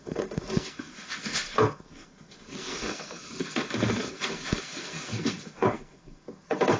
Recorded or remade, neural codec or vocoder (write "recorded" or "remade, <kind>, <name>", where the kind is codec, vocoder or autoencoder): remade, codec, SNAC